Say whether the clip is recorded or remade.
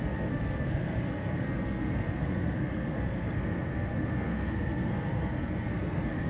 remade